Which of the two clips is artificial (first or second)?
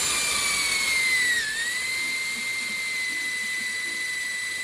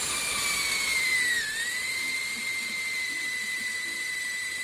second